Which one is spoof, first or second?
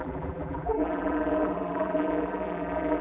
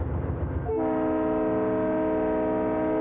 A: first